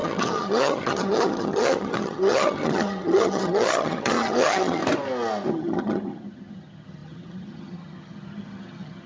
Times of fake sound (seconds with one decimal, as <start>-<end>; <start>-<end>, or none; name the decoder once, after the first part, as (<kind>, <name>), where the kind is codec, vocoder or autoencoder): 0.0-4.8 (vocoder, HiFi-GAN); 5.5-9.1